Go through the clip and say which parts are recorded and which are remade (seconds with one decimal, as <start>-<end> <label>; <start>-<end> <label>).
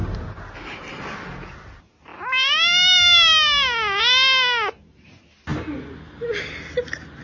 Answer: 0.0-7.2 recorded